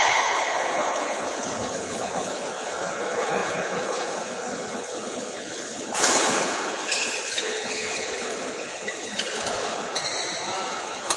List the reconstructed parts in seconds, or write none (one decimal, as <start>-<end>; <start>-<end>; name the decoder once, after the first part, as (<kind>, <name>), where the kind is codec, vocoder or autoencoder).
0.0-10.0 (codec, HILCodec); 10.7-11.2